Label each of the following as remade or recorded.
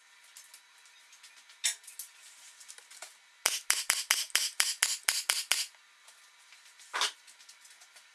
recorded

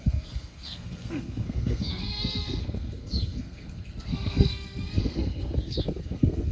remade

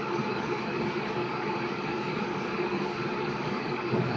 remade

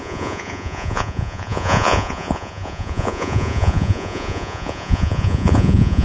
remade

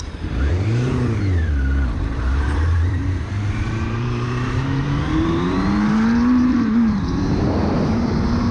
remade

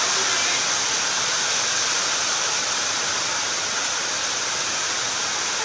recorded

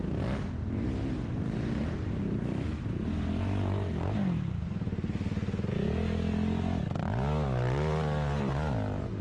recorded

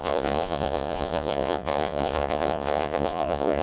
remade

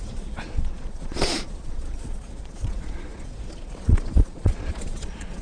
remade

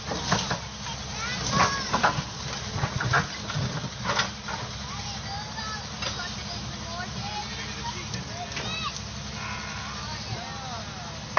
recorded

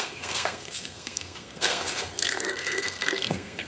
remade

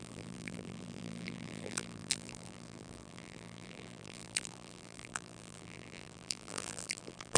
remade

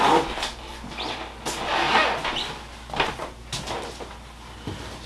recorded